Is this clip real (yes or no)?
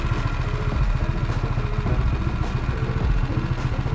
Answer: yes